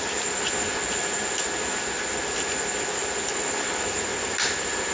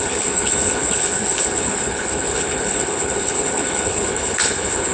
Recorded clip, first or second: first